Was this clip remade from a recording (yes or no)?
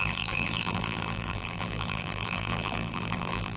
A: yes